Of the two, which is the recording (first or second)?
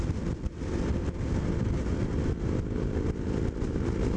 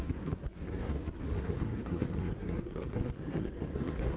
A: first